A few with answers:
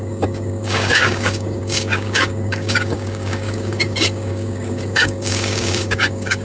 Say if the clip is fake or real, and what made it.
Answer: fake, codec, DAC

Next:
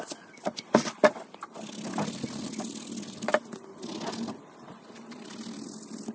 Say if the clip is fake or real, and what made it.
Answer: real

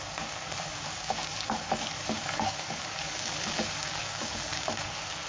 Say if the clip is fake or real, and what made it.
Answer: fake, codec, DAC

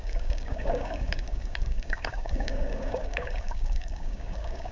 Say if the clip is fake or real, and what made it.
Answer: fake, codec, DAC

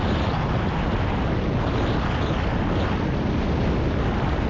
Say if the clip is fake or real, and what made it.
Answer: real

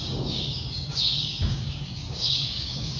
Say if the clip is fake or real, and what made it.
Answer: fake, codec, DAC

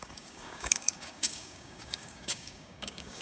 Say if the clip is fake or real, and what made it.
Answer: fake, codec, DAC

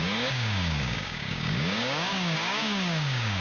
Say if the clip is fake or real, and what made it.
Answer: fake, codec, DAC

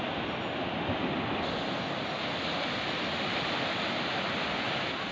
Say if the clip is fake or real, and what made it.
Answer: real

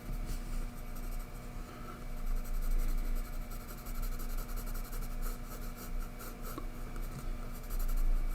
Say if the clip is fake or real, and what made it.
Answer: real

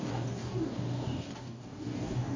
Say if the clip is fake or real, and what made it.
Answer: fake, codec, DAC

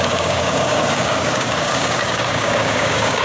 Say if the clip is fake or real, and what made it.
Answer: fake, codec, DAC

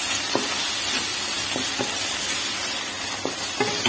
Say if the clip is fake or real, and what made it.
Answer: real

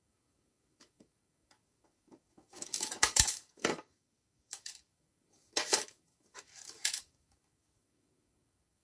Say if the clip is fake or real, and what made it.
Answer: fake, codec, DAC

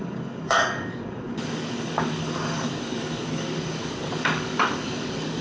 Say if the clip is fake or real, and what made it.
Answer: fake, codec, DAC